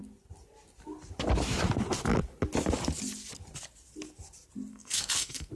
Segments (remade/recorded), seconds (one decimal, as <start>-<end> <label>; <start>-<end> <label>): 0.0-4.7 recorded; 4.7-5.5 remade

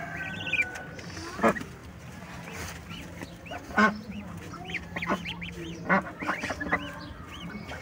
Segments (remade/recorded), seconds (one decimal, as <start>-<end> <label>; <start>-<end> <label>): 0.0-7.8 recorded

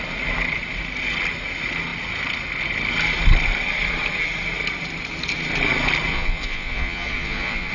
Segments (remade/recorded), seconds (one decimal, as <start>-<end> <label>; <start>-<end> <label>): 0.0-6.1 recorded; 6.1-7.7 remade

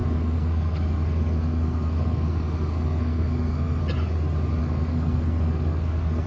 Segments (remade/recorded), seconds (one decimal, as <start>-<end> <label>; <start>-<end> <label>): 0.0-3.8 remade; 3.8-4.6 recorded; 4.6-6.3 remade

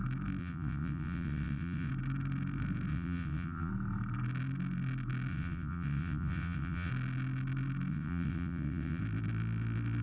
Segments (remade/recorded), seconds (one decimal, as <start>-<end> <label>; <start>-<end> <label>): 0.0-0.4 recorded; 0.4-1.9 remade; 1.9-2.9 recorded; 2.9-3.7 remade; 3.7-5.3 recorded; 5.3-6.9 remade; 6.9-7.9 recorded; 7.9-9.0 remade; 9.0-10.0 recorded

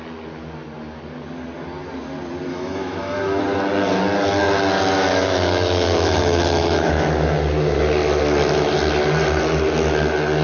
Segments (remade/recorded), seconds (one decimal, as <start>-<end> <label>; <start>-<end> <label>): 0.0-2.5 recorded; 2.5-3.4 remade; 3.4-5.1 recorded; 5.1-6.9 remade; 6.9-10.4 recorded

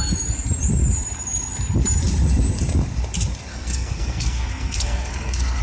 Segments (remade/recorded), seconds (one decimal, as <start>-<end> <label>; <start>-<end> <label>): 0.0-3.5 recorded; 3.5-5.6 remade